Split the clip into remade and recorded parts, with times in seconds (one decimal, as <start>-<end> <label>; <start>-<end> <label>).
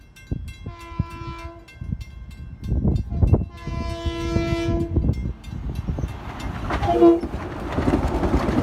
0.0-8.6 recorded